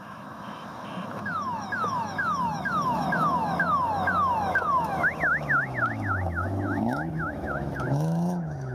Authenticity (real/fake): fake